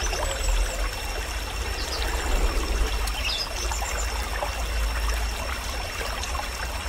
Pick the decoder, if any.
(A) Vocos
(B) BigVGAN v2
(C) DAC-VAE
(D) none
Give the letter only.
D